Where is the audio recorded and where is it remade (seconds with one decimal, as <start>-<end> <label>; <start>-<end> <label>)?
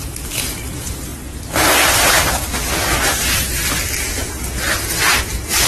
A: 0.0-5.7 recorded